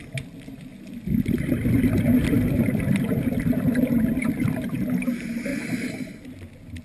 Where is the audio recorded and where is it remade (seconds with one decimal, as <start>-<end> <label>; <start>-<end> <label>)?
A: 0.0-2.2 recorded; 2.2-4.8 remade; 4.8-5.5 recorded; 5.5-6.1 remade; 6.1-6.8 recorded